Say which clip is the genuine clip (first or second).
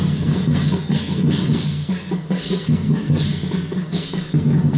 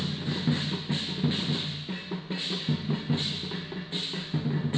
second